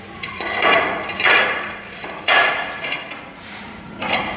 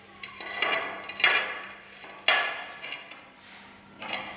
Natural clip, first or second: second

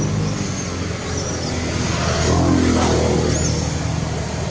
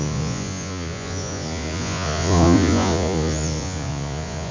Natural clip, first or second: first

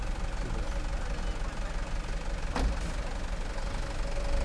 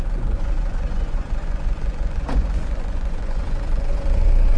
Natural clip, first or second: first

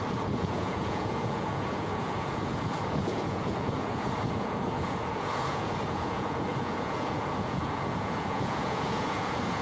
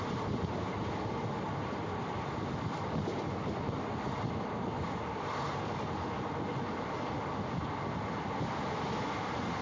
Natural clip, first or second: second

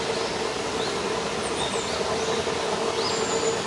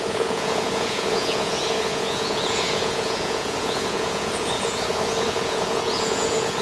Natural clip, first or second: first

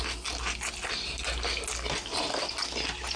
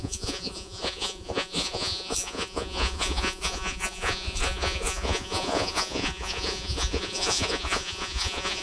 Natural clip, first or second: first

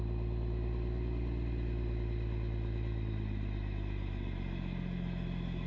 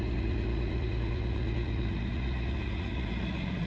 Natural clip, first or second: first